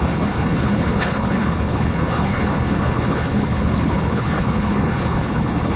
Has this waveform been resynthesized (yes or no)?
yes